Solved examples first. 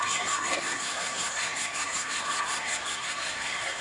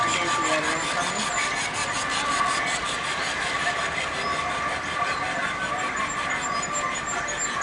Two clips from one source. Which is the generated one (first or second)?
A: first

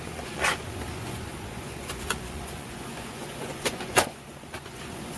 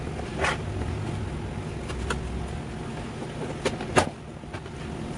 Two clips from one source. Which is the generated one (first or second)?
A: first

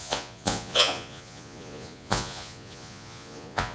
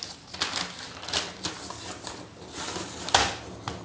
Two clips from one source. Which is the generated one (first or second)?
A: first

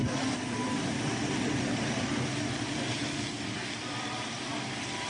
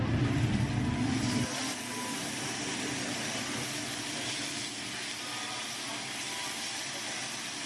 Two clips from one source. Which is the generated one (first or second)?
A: first